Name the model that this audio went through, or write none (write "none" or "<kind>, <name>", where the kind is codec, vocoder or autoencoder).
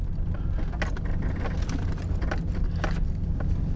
none